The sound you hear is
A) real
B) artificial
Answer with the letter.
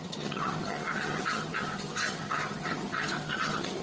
B